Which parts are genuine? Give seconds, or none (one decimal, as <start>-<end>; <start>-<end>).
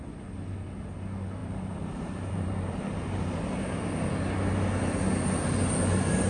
0.0-1.4; 4.1-6.3